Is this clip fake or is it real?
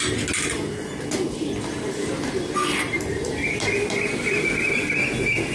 real